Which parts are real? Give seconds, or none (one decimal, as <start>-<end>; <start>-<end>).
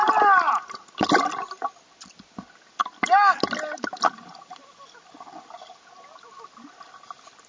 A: 0.0-7.5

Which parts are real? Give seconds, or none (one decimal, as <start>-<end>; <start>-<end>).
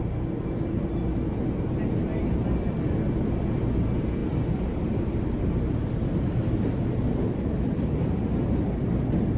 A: 0.0-4.2; 8.3-9.4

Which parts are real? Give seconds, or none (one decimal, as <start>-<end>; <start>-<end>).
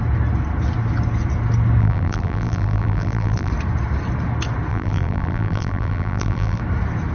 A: 0.0-1.8; 3.5-4.7; 6.6-7.1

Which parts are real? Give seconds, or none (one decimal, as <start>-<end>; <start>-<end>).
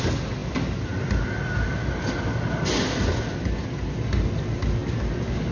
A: 0.0-5.5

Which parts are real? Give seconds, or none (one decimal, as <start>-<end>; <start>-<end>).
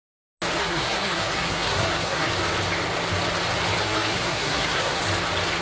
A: 0.0-0.6; 2.3-3.8; 5.0-5.6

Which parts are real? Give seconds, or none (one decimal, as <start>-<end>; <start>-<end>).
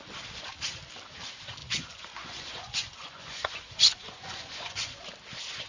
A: 0.0-1.6; 5.0-5.7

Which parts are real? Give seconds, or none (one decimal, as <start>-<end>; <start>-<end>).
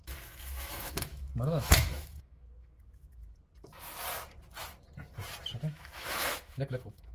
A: 3.2-5.6